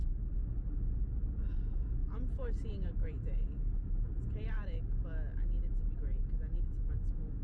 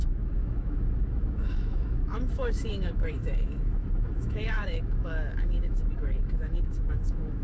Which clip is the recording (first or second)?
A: first